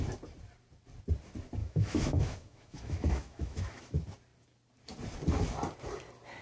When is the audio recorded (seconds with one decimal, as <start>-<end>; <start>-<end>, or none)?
0.0-1.6; 3.8-6.4